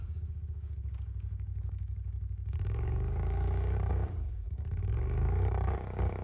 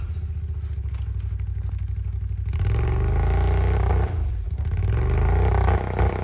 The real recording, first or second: second